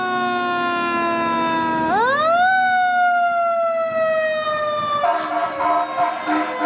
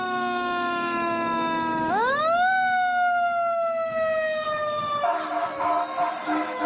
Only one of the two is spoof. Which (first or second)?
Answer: second